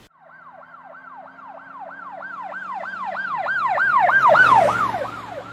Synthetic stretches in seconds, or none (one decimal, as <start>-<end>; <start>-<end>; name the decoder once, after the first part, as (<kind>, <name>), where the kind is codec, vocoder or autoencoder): none